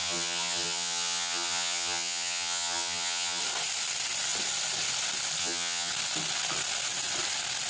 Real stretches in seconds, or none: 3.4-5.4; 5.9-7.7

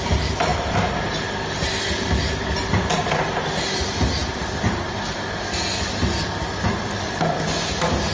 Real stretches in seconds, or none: 0.0-8.1